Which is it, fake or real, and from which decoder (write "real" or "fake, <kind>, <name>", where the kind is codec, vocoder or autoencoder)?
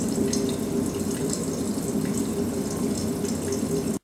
real